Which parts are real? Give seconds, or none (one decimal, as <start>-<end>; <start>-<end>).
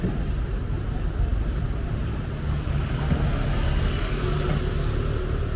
0.0-5.6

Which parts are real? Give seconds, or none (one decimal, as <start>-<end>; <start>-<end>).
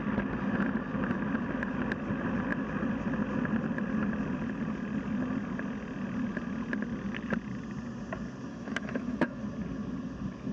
0.0-8.5; 9.4-10.5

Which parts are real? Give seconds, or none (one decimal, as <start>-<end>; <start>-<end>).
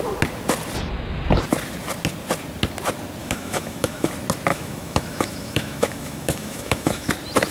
0.0-3.2; 4.1-4.5; 7.1-7.5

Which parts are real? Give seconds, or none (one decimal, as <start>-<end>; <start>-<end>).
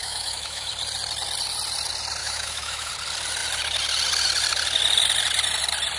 0.7-2.2; 2.9-6.0